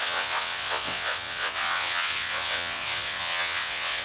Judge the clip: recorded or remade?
remade